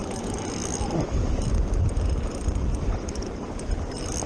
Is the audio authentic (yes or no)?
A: yes